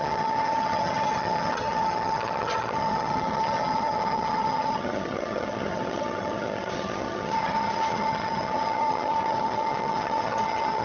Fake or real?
fake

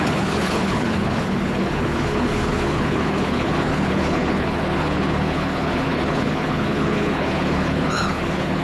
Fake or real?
fake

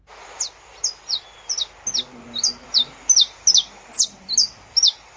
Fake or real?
real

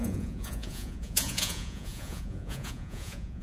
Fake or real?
fake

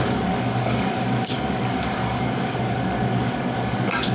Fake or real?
fake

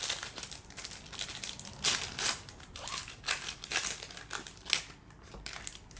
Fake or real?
real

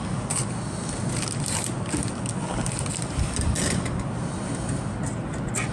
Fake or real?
real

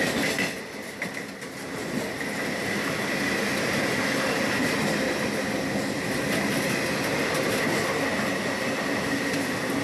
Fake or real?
real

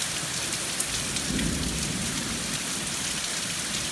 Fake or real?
real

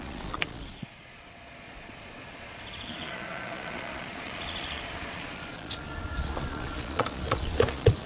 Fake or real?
fake